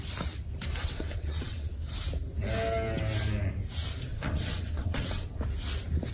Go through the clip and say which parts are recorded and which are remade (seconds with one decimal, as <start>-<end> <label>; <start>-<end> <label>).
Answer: 0.0-0.8 recorded; 0.8-1.7 remade; 1.7-4.1 recorded; 4.1-5.4 remade; 5.4-6.1 recorded